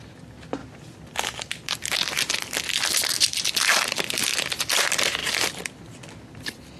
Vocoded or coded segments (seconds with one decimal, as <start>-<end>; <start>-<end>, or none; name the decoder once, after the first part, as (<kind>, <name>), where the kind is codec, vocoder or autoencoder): 4.3-4.8 (vocoder, BigVGAN v2); 5.2-5.8

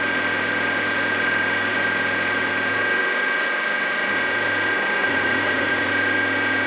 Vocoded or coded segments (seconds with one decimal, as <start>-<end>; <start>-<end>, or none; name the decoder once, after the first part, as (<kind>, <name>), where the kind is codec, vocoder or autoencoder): 5.0-5.9 (vocoder, Vocos)